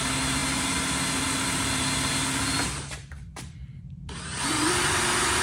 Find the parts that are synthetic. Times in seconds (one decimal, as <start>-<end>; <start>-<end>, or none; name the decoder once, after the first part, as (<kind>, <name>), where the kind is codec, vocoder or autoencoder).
3.2-5.4 (vocoder, BigVGAN v2)